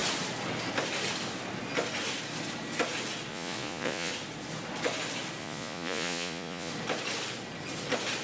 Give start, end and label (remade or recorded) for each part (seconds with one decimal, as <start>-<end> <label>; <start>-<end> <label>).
0.0-3.3 recorded; 3.3-4.1 remade; 4.1-5.4 recorded; 5.4-6.7 remade; 6.7-8.2 recorded